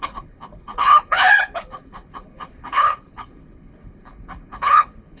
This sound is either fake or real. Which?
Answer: fake